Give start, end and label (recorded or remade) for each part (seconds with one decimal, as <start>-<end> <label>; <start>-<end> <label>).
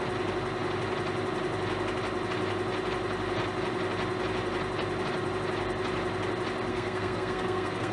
0.0-6.7 recorded; 6.7-7.9 remade